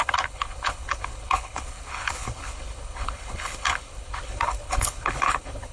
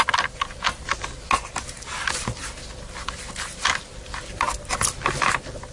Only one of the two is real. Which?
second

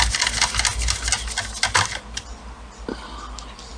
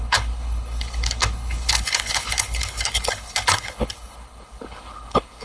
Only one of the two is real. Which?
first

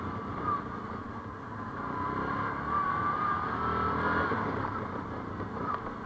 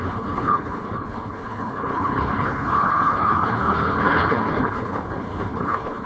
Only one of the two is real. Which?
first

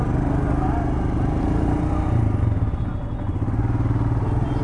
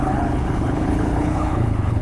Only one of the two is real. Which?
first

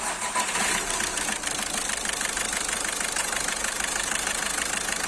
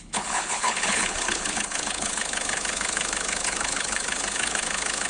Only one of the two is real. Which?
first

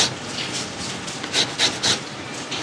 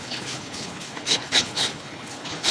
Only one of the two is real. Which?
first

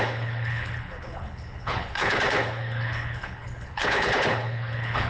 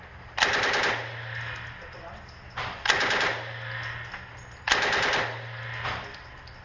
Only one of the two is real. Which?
second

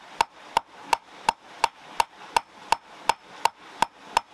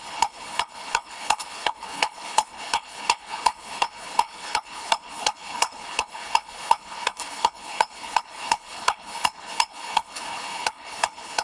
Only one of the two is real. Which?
first